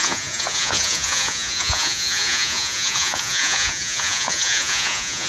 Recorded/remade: remade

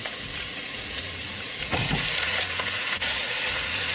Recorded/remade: remade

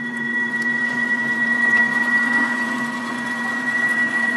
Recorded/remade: remade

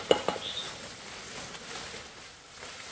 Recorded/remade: recorded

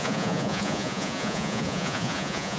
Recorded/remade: remade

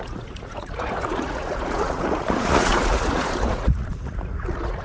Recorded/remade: remade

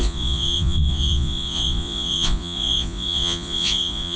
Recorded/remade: remade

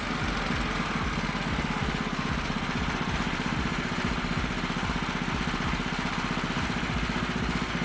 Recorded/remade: recorded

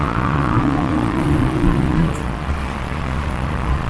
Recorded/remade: remade